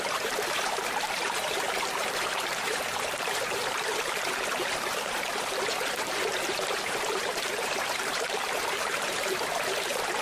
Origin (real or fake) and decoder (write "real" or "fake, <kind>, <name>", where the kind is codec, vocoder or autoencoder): fake, vocoder, BigVGAN v2